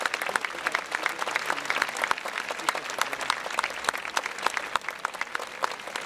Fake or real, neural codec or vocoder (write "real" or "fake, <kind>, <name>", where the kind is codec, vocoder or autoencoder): real